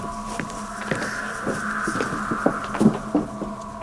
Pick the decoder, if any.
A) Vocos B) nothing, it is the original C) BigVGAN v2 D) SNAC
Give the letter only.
B